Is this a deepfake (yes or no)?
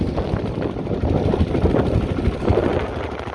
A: no